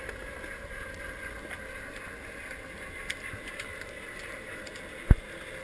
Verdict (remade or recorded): recorded